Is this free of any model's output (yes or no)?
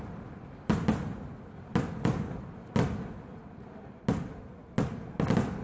yes